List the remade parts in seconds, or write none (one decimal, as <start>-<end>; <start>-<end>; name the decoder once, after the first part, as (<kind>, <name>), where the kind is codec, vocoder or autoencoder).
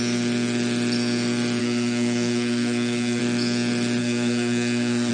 1.6-3.2 (codec, SNAC); 4.0-5.1